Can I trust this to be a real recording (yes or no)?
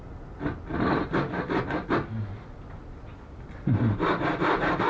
yes